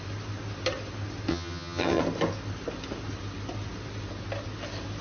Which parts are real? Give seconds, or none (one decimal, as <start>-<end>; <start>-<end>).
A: 0.0-1.3; 2.0-5.0